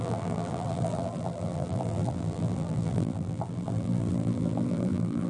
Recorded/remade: remade